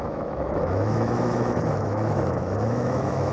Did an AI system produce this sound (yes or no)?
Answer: yes